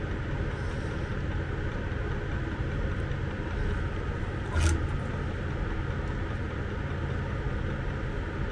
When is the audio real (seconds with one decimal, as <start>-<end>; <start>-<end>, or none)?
0.0-8.5